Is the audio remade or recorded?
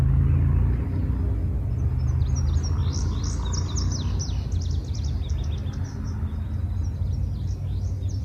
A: recorded